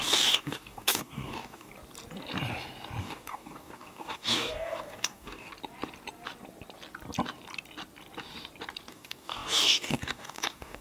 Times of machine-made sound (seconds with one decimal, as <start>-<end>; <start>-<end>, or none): 0.0-1.7; 3.0-5.5; 8.9-10.8